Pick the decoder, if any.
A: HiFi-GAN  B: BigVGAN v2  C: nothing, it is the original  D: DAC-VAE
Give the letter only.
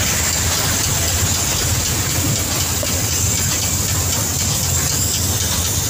C